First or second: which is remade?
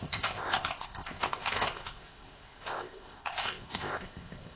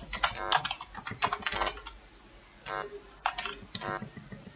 first